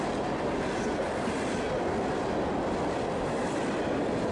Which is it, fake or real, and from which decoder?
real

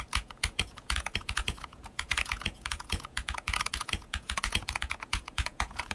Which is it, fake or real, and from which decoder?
fake, vocoder, Vocos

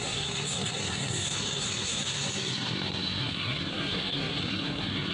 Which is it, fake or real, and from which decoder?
fake, codec, SNAC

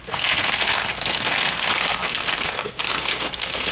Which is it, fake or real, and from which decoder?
fake, codec, SNAC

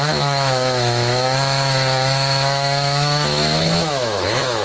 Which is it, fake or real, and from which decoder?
fake, autoencoder, DAC-VAE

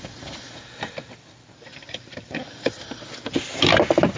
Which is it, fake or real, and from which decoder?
real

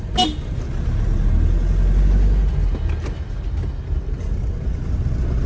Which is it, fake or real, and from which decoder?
real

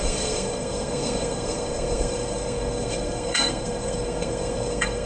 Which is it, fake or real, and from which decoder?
fake, codec, SNAC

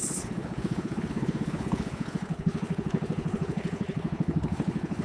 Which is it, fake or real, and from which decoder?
fake, codec, HILCodec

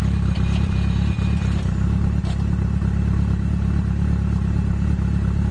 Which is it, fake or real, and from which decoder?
real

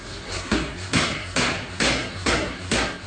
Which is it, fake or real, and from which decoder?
fake, codec, SNAC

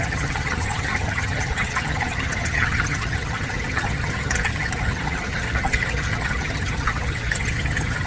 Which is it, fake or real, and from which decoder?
fake, vocoder, HiFi-GAN